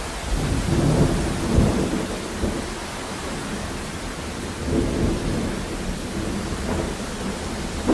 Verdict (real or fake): real